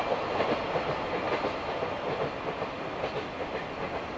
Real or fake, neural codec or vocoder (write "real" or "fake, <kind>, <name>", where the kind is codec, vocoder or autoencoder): real